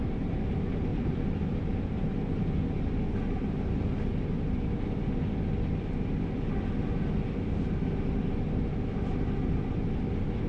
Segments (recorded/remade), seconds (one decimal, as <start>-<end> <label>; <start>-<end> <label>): 0.0-0.9 recorded; 0.9-2.0 remade; 2.0-10.5 recorded